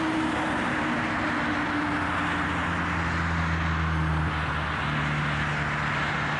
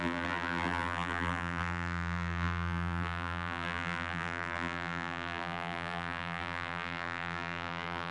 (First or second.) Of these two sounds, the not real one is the second